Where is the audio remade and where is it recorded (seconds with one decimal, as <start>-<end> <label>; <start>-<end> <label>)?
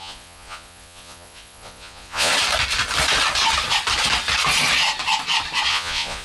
0.0-2.3 remade; 2.3-5.7 recorded; 5.7-6.2 remade